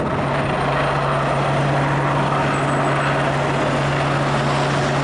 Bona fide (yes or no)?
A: yes